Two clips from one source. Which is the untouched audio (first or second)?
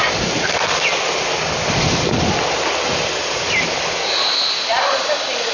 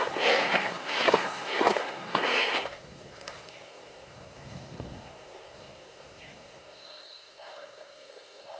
first